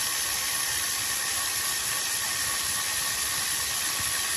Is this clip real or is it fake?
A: real